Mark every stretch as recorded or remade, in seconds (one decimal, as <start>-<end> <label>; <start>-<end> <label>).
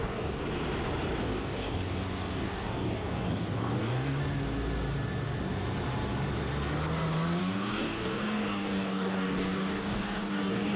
0.0-0.4 remade; 0.4-1.2 recorded; 1.2-4.2 remade; 4.2-7.4 recorded; 7.4-10.8 remade